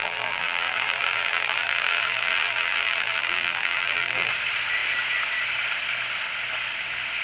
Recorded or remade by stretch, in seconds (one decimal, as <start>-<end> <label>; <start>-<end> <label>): 0.0-4.3 remade; 4.3-7.2 recorded

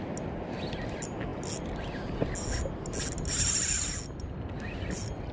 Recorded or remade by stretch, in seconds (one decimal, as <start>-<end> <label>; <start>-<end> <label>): 0.0-5.3 recorded

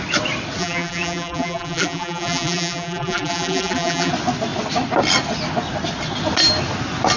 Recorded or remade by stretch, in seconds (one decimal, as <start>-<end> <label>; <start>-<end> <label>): 0.0-0.6 recorded; 0.6-4.1 remade; 4.1-7.2 recorded

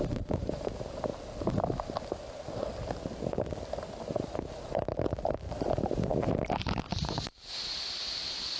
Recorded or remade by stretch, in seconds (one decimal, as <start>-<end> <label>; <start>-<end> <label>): 0.0-1.1 remade; 1.1-4.0 recorded; 4.0-6.1 remade; 6.1-8.2 recorded; 8.2-8.6 remade

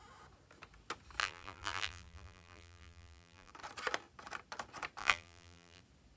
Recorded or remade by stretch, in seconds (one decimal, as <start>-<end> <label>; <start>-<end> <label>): 0.0-1.2 recorded; 1.2-3.5 remade; 3.5-5.0 recorded; 5.0-5.8 remade; 5.8-6.2 recorded

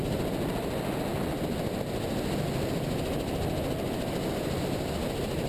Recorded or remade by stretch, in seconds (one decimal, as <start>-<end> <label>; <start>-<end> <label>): 0.0-5.5 recorded

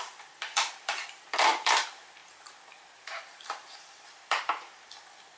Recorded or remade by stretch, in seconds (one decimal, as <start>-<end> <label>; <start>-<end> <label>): 0.0-5.4 remade